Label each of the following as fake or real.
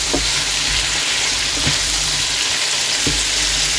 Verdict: fake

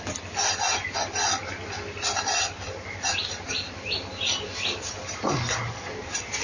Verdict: real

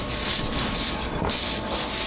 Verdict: real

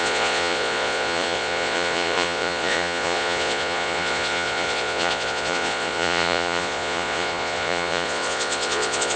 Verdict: fake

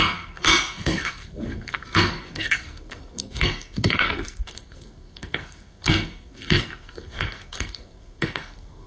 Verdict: fake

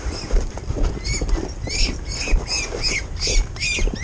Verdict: real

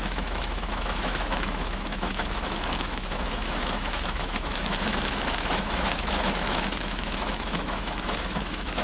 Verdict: fake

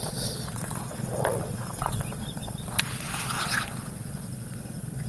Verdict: fake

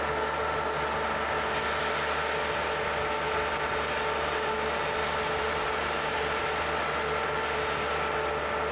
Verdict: real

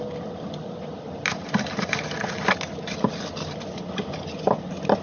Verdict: real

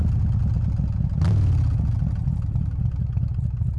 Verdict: real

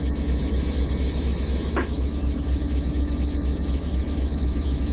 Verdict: fake